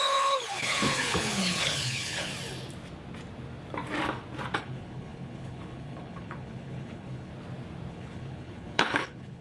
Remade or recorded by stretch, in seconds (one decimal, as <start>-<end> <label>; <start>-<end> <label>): 0.0-2.3 remade; 2.3-4.6 recorded; 4.6-7.3 remade; 7.3-7.9 recorded; 7.9-9.4 remade